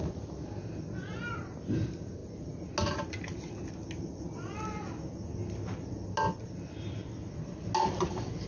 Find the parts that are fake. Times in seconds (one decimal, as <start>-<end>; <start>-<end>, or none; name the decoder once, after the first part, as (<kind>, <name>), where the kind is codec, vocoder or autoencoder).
none